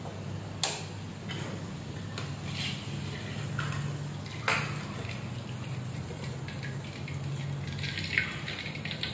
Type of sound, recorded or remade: recorded